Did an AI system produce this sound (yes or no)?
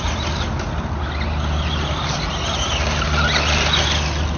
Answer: no